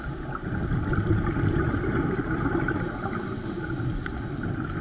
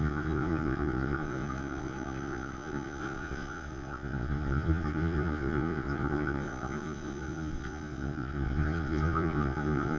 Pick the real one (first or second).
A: first